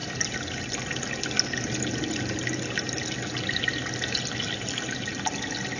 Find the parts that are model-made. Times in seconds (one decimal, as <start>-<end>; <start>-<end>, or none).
none